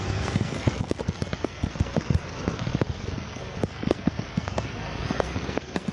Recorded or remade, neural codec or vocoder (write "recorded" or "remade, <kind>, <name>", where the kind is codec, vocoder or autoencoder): remade, codec, SNAC